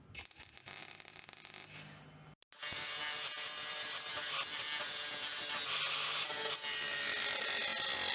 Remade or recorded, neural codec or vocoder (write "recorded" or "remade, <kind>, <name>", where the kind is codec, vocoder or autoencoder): recorded